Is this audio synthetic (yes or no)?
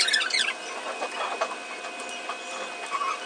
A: no